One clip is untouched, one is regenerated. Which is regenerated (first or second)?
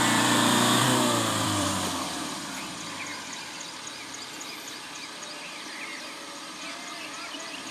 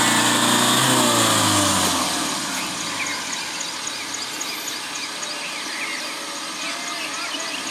first